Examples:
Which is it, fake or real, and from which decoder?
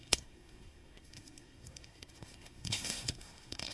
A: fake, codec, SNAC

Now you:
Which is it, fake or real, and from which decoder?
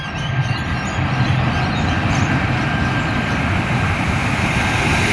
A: fake, vocoder, BigVGAN v2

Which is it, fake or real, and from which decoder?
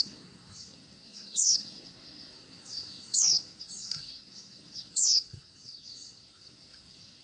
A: fake, codec, SNAC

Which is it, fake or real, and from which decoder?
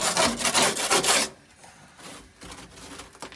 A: real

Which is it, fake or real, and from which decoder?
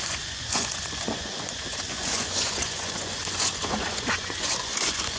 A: fake, vocoder, Vocos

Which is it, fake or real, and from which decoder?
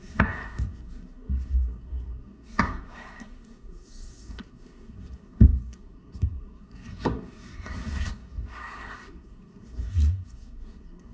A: fake, codec, SNAC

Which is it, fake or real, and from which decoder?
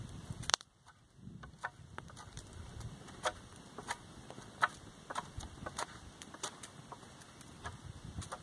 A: real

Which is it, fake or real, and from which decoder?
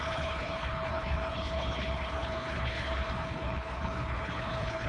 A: fake, codec, HILCodec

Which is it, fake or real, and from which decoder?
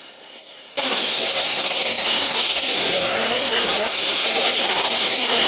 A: fake, codec, SNAC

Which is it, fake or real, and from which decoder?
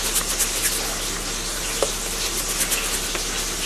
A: real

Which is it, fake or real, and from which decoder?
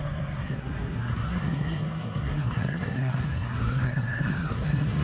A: fake, codec, SNAC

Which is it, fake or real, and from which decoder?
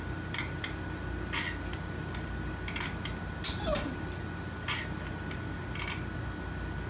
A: real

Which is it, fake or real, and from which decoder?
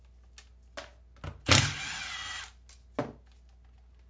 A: real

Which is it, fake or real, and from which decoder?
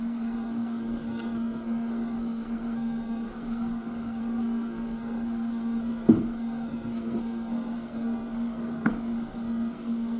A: fake, codec, SNAC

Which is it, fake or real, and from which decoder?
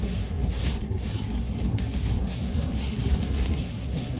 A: fake, codec, SNAC